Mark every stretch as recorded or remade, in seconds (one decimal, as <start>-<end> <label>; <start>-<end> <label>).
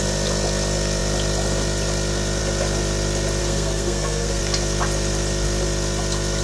0.0-3.4 recorded; 3.4-4.4 remade; 4.4-6.4 recorded